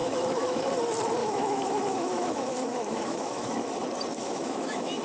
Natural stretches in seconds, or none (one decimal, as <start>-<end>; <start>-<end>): 0.7-1.2; 3.7-4.2